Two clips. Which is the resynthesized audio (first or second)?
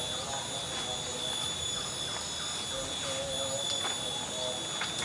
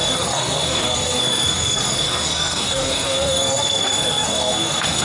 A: second